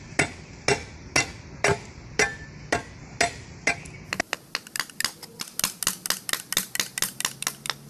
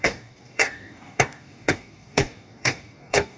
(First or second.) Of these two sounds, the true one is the first